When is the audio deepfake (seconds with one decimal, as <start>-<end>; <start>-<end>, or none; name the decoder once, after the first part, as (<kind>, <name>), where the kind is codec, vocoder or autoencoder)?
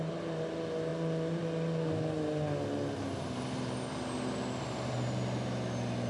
none